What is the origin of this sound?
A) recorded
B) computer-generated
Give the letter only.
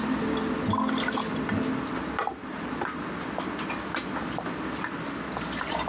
A